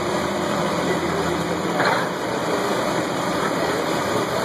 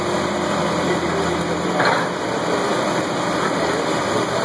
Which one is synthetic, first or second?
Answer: first